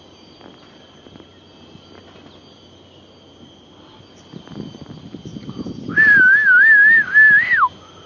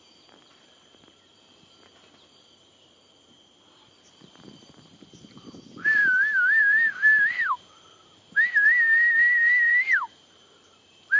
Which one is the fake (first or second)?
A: second